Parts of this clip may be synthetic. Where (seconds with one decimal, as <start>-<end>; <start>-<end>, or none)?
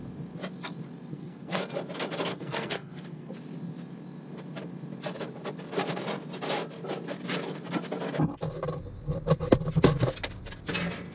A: 1.1-1.6; 2.3-3.3